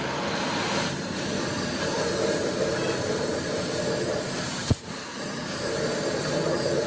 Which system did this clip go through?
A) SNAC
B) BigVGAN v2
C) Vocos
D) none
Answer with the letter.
B